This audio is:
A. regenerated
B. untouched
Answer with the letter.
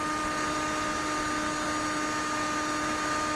B